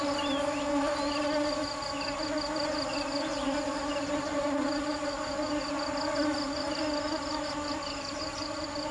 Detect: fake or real real